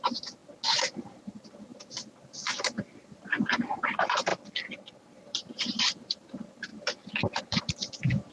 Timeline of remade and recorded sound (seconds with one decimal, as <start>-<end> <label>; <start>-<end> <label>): 0.0-0.4 remade; 0.4-0.9 recorded; 0.9-4.3 remade; 4.3-5.0 recorded; 5.0-6.7 remade; 6.7-7.4 recorded; 7.4-8.3 remade